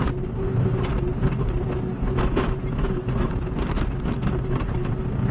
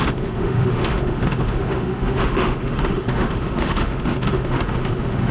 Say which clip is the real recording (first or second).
first